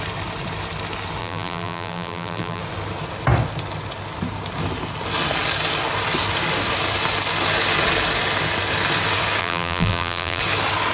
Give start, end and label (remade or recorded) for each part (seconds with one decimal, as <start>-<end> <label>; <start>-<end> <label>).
0.0-1.2 recorded; 1.2-2.6 remade; 2.6-9.4 recorded; 9.4-10.4 remade; 10.4-10.9 recorded

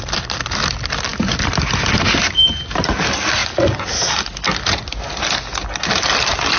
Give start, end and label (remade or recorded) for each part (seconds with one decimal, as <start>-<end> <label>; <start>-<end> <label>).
0.0-6.6 recorded

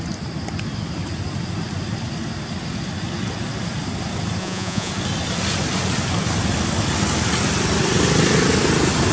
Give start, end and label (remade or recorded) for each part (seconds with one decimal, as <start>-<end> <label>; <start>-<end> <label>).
0.0-4.4 recorded; 4.4-4.9 remade; 4.9-9.1 recorded

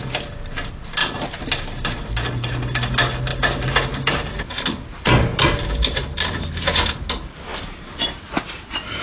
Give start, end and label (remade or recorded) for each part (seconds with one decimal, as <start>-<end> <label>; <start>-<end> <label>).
0.0-1.0 recorded; 1.0-2.3 remade; 2.3-3.3 recorded; 3.3-7.1 remade; 7.1-9.0 recorded